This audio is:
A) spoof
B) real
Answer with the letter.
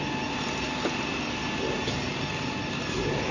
B